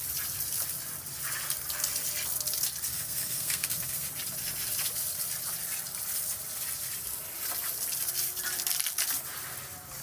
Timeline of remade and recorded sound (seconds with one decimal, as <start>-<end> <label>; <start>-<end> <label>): 0.0-2.9 recorded; 2.9-4.1 remade; 4.1-10.0 recorded